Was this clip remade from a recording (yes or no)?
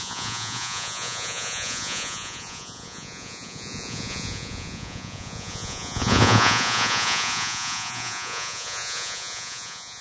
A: yes